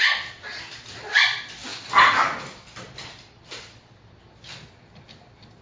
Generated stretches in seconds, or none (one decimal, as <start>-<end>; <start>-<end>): none